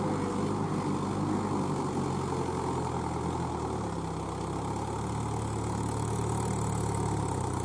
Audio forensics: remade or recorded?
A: recorded